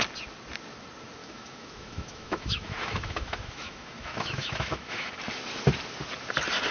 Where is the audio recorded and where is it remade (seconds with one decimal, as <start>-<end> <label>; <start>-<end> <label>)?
0.0-1.2 recorded; 1.2-5.1 remade; 5.1-6.7 recorded